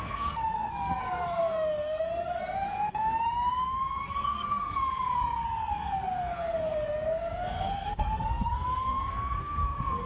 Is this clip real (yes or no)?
no